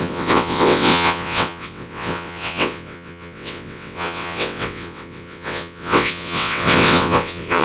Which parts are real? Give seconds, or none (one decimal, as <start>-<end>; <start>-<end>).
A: none